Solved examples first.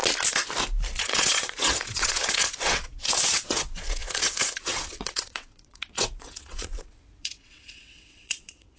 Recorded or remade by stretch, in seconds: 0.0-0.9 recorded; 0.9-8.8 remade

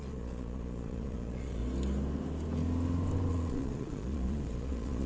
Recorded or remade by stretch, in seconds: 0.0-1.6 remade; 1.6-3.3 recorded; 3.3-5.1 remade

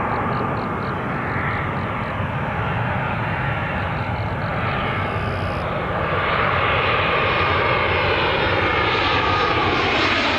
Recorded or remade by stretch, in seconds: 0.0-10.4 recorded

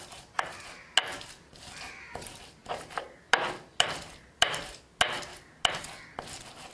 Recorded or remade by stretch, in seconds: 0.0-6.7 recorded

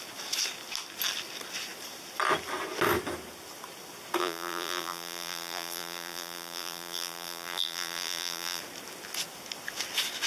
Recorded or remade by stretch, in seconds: 0.0-4.2 recorded; 4.2-8.6 remade; 8.6-10.3 recorded